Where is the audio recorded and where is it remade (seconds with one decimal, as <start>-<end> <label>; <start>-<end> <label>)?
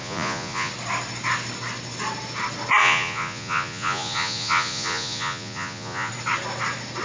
0.0-0.7 remade; 0.7-2.8 recorded; 2.8-6.1 remade; 6.1-7.0 recorded